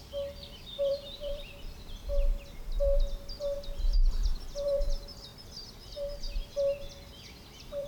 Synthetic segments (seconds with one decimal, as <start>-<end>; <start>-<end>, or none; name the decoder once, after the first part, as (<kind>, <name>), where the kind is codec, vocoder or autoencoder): 0.0-2.0 (vocoder, BigVGAN v2); 4.1-5.3; 6.8-7.9